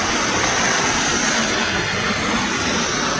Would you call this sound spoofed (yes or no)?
no